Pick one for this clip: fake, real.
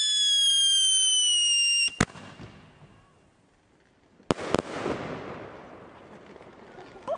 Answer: real